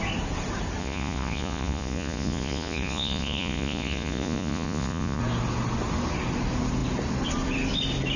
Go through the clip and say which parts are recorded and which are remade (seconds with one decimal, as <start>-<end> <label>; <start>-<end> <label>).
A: 0.0-0.8 recorded; 0.8-5.2 remade; 5.2-8.2 recorded